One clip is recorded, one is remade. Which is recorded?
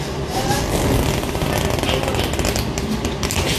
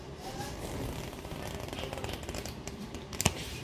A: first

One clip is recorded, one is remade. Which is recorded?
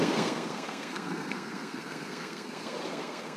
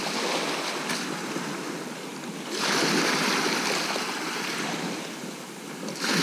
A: second